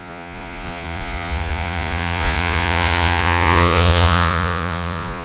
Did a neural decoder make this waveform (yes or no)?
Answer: yes